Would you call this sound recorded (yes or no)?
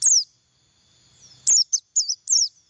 yes